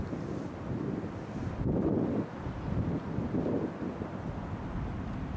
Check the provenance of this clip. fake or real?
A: real